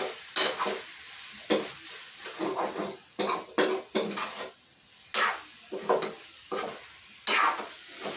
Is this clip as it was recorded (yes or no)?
yes